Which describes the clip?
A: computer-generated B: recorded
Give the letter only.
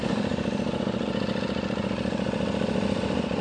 B